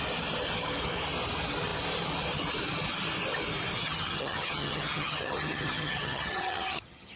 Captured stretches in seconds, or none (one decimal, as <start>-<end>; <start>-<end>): 0.0-3.8